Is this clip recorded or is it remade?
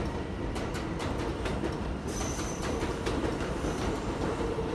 remade